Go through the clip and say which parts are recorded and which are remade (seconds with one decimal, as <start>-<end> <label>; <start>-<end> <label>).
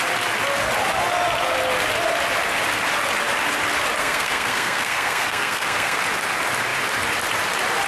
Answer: 0.0-4.0 recorded; 4.0-6.0 remade; 6.0-7.9 recorded